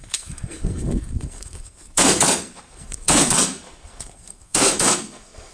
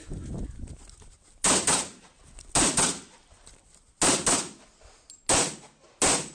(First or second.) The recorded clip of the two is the second